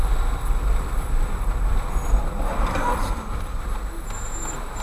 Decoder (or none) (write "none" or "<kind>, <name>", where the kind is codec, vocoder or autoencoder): vocoder, BigVGAN v2